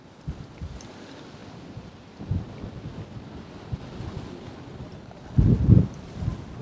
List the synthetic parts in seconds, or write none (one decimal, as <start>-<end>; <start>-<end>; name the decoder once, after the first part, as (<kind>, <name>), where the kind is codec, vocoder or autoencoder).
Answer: none